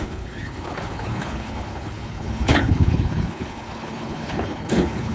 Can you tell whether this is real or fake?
fake